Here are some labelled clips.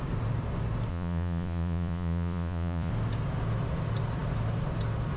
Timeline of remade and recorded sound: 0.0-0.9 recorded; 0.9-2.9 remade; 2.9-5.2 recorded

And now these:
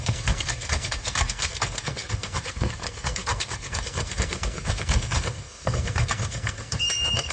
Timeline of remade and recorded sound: 0.0-7.3 remade

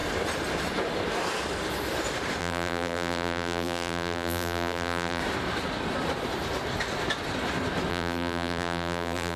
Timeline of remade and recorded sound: 0.0-2.4 recorded; 2.4-5.2 remade; 5.2-7.9 recorded; 7.9-9.4 remade

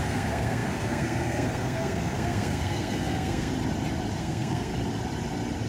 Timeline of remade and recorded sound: 0.0-3.5 remade; 3.5-4.2 recorded; 4.2-4.7 remade; 4.7-5.7 recorded

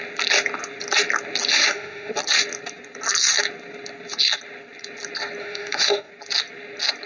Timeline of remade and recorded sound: 0.0-1.5 recorded; 1.5-2.1 remade; 2.1-5.4 recorded; 5.4-6.1 remade; 6.1-7.1 recorded

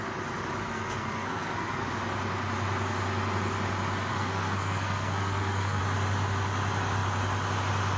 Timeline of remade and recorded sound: 0.0-0.6 recorded; 0.6-1.9 remade; 1.9-4.1 recorded; 4.1-5.8 remade; 5.8-8.0 recorded

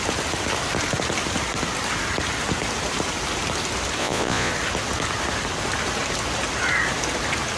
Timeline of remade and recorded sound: 0.0-4.0 recorded; 4.0-4.5 remade; 4.5-7.6 recorded

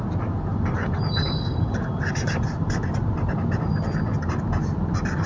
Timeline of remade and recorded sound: 0.0-0.5 recorded; 0.5-3.7 remade; 3.7-5.3 recorded